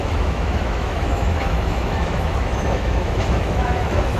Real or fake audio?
fake